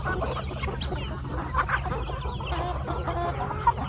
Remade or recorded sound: recorded